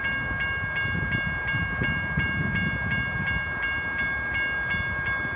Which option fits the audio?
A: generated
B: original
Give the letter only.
B